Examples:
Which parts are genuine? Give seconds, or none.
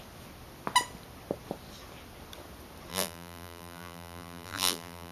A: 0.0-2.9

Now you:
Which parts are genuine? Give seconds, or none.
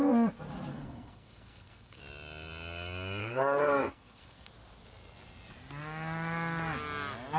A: 0.0-0.7; 2.0-3.2; 4.5-7.4